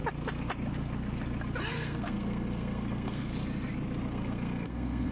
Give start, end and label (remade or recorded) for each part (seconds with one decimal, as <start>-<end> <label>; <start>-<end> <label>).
0.0-1.7 recorded; 1.7-3.3 remade; 3.3-4.1 recorded; 4.1-5.1 remade